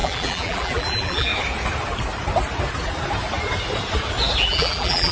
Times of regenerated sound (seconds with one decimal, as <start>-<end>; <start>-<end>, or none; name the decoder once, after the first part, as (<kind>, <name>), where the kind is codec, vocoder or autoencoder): 0.0-1.3 (vocoder, BigVGAN v2); 4.4-5.1